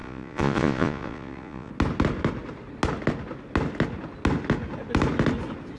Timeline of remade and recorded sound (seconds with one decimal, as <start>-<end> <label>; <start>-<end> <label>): 0.0-1.7 remade; 1.7-5.8 recorded